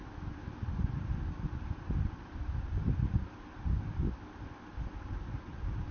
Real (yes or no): no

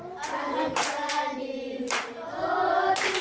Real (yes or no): no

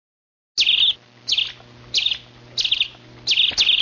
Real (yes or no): yes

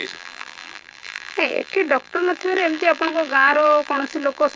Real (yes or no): no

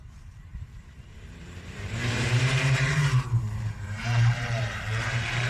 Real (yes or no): no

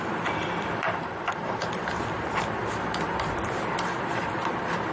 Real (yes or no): no